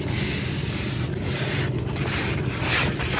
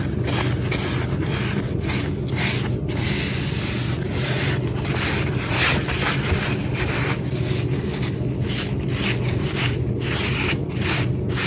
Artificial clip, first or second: first